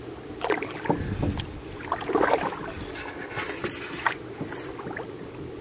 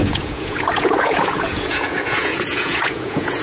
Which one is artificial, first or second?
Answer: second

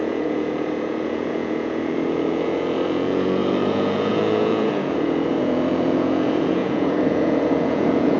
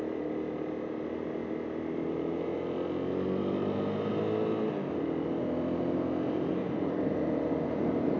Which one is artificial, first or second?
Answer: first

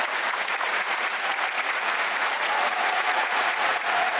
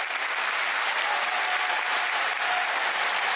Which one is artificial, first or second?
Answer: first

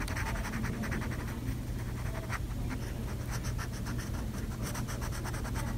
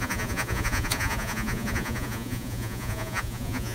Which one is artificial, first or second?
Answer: second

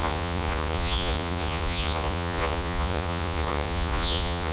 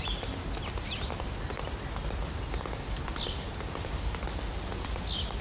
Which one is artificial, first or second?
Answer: first